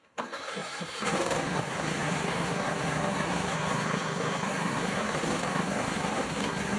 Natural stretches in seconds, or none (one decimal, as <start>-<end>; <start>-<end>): none